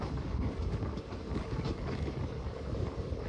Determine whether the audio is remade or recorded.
remade